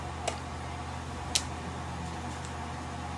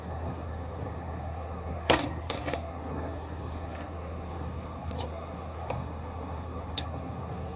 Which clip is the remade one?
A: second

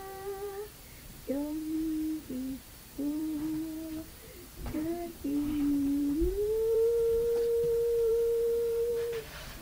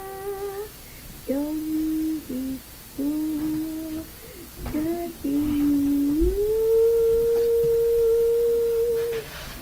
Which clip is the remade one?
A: first